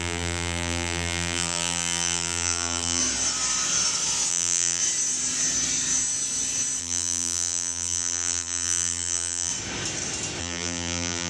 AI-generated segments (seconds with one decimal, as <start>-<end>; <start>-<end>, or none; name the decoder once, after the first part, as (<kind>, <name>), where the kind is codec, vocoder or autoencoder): 0.0-3.0 (vocoder, BigVGAN v2); 4.3-4.8; 6.8-9.5; 10.4-11.3